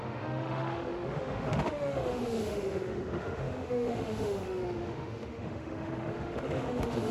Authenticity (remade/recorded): remade